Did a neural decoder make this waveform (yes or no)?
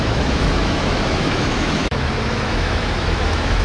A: yes